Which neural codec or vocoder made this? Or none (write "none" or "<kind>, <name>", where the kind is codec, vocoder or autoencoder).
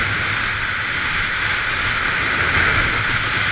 none